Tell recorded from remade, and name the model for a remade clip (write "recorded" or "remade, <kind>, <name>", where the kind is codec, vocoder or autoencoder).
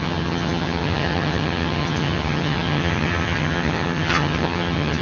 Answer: remade, vocoder, HiFi-GAN